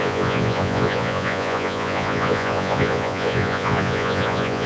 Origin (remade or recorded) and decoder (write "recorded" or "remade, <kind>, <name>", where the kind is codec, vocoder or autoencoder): remade, vocoder, Vocos